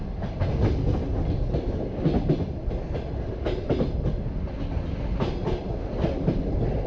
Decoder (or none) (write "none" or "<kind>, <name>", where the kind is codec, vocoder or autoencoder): none